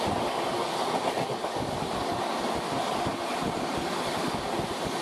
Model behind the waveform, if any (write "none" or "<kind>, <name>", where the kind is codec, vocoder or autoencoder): none